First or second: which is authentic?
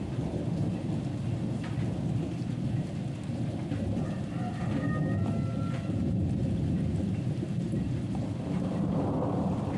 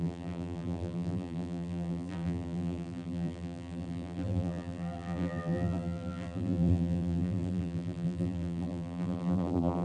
first